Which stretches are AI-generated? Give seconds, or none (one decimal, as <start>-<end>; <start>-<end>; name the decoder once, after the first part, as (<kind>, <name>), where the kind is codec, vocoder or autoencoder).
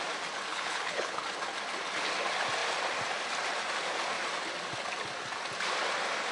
0.5-1.2 (codec, HILCodec)